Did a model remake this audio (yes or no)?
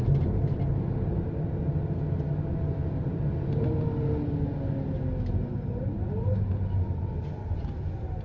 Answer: no